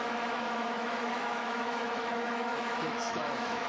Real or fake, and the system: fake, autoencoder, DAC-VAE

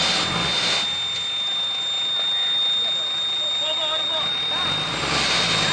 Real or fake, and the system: real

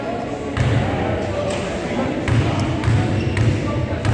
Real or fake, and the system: real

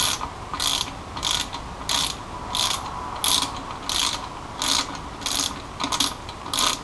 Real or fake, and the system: real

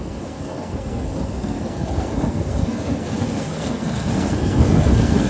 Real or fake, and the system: fake, codec, SNAC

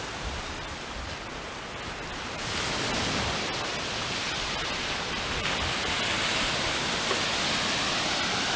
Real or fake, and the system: real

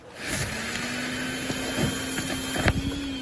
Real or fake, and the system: real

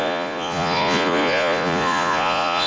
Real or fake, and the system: fake, vocoder, Vocos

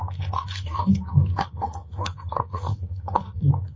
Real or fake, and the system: fake, codec, SNAC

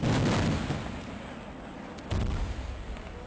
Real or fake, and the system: real